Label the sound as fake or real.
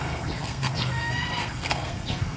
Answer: fake